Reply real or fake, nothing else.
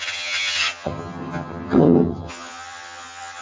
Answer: fake